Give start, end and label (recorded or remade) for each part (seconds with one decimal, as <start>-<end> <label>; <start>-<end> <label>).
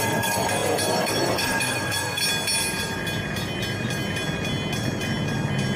0.0-2.2 remade; 2.2-5.8 recorded